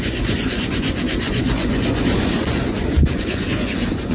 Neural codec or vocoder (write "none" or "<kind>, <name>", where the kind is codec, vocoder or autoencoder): vocoder, Vocos